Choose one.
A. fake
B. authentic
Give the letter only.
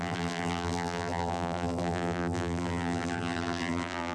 A